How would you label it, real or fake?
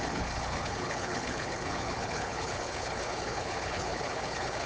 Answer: fake